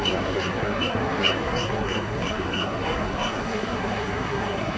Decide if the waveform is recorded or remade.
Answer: remade